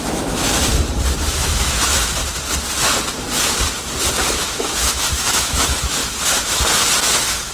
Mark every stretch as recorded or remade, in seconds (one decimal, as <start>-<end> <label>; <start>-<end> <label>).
0.0-0.7 remade; 0.7-1.3 recorded; 1.3-2.2 remade; 2.2-4.3 recorded; 4.3-6.0 remade; 6.0-7.0 recorded; 7.0-7.5 remade